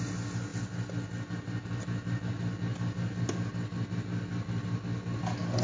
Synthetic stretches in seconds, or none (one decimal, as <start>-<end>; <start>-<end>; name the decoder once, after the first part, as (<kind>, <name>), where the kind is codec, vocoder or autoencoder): none